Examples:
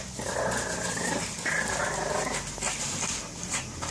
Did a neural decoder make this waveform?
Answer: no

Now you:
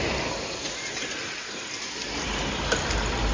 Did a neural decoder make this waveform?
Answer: no